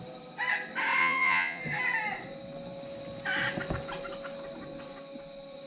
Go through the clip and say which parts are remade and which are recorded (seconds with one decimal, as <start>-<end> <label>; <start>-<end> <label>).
0.0-1.0 recorded; 1.0-1.6 remade; 1.6-5.7 recorded

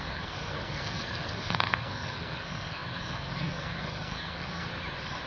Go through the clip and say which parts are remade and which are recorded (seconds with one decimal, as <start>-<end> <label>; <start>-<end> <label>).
0.0-4.7 remade; 4.7-5.3 recorded